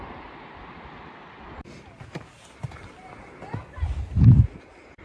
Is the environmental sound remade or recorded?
recorded